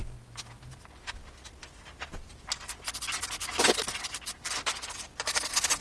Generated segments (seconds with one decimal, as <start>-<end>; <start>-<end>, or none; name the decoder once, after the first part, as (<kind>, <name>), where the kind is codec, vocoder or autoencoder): none